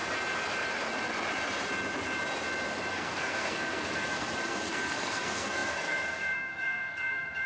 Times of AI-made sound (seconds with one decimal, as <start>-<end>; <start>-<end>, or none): 2.9-7.5